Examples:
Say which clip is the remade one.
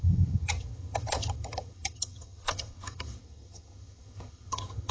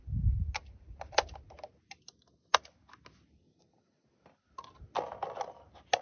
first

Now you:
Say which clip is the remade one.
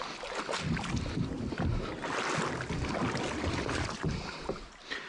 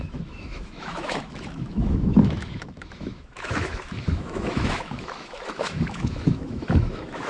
second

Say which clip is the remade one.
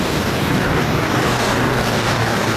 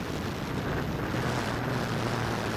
first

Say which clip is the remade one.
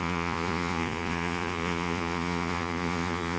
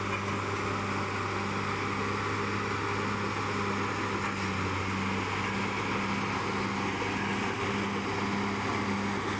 first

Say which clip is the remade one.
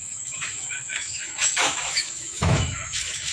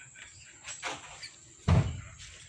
first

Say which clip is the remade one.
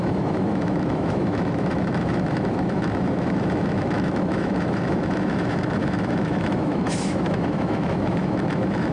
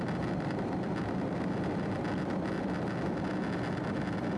first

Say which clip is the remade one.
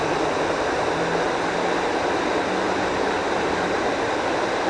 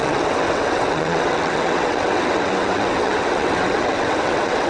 second